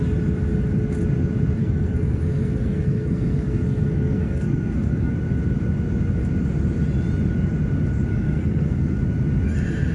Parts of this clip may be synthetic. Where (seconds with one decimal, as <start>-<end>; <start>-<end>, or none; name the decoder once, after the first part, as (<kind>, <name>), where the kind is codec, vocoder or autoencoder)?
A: 1.6-5.1 (codec, SNAC); 8.1-9.0